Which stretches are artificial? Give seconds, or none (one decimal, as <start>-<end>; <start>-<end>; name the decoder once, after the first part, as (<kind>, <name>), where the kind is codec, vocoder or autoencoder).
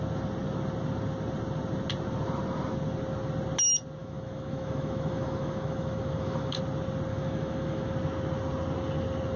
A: 4.0-6.6 (autoencoder, DAC-VAE); 7.1-7.9